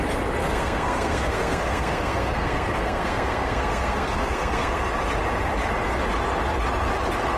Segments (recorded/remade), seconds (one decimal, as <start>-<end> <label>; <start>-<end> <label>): 0.0-0.4 recorded; 0.4-4.8 remade; 4.8-7.4 recorded